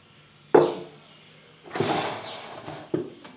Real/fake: real